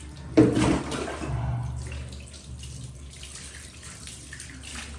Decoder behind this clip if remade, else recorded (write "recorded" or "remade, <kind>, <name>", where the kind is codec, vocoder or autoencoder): recorded